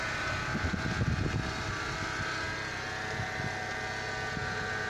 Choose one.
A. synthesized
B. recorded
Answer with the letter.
B